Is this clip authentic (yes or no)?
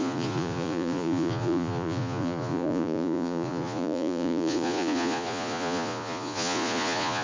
no